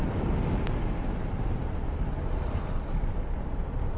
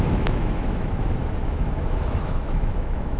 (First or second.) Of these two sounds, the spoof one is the second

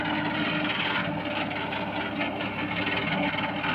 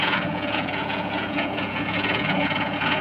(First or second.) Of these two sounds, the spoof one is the second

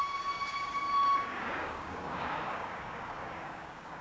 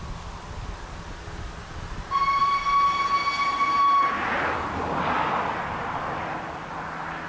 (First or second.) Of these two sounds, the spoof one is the first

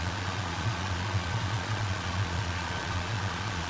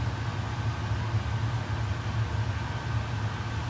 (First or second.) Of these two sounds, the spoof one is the first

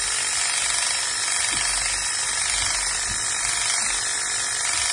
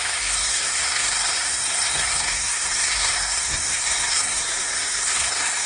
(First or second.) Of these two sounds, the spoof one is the second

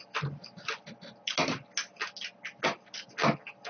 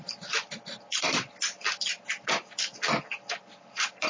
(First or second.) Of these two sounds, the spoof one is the second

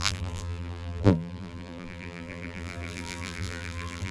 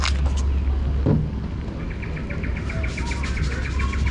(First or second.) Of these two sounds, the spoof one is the first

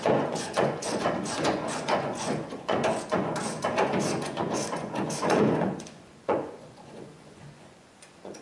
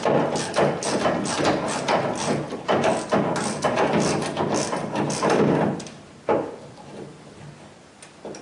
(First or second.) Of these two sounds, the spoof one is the first